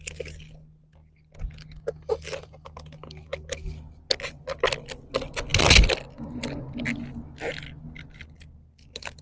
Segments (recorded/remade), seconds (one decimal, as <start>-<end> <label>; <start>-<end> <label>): 0.0-9.2 recorded